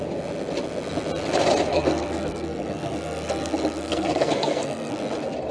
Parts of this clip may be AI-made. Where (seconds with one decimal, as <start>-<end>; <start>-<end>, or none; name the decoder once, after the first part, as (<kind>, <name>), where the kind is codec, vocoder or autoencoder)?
1.7-5.0 (codec, SNAC)